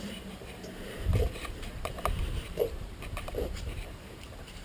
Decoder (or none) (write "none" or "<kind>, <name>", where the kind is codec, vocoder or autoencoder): vocoder, BigVGAN v2